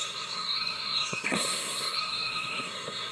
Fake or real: fake